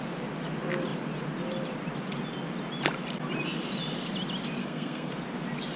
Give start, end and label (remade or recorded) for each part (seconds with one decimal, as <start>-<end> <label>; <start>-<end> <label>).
0.0-4.6 recorded; 4.6-5.1 remade; 5.1-5.8 recorded